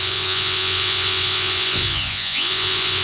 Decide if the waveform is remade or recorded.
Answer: remade